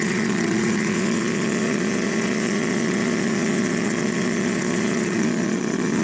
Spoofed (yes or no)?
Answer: yes